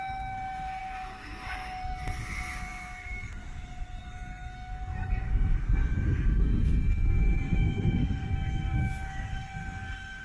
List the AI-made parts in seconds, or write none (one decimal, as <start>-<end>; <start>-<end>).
0.0-10.2

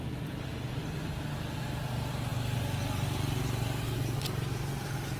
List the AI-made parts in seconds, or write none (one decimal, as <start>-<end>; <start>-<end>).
none